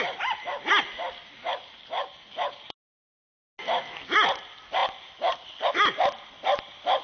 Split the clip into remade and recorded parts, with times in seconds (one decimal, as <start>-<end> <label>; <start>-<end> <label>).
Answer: 0.0-7.0 recorded

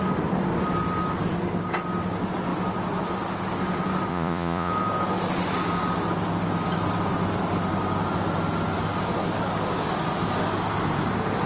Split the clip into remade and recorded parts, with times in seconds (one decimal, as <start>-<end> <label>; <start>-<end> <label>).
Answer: 0.0-4.1 recorded; 4.1-4.7 remade; 4.7-11.5 recorded